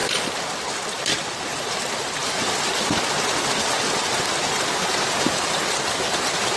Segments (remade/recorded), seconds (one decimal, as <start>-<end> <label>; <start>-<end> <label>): 0.0-6.6 recorded